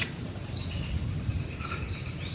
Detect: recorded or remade remade